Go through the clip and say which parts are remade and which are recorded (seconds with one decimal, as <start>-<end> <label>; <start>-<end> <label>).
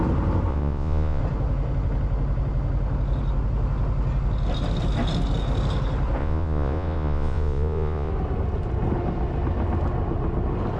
0.0-0.5 recorded; 0.5-1.2 remade; 1.2-6.2 recorded; 6.2-8.1 remade; 8.1-10.8 recorded